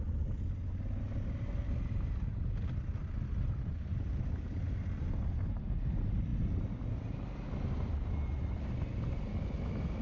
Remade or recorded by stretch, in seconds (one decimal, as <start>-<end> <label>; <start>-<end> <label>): 0.0-10.0 recorded